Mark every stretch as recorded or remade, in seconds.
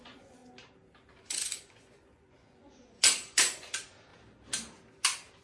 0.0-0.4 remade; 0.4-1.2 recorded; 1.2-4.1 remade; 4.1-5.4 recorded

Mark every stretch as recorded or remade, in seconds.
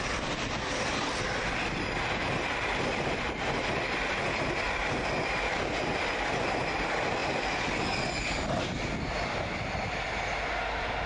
0.0-11.1 recorded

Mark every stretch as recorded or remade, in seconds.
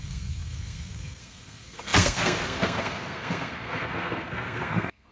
0.0-5.1 remade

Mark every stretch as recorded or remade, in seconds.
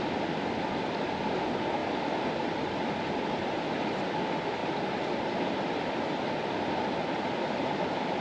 0.0-1.8 recorded; 1.8-3.1 remade; 3.1-4.6 recorded; 4.6-8.2 remade